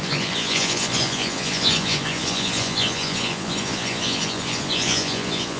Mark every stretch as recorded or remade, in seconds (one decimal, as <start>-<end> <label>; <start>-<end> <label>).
0.0-5.6 remade